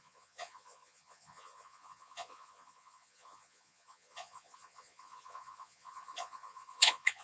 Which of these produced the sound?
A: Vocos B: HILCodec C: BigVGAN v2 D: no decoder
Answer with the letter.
A